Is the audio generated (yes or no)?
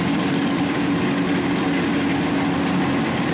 no